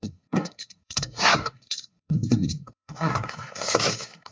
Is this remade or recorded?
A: remade